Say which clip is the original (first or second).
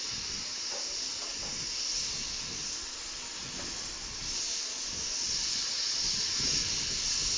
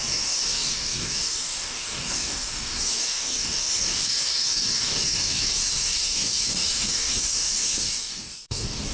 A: first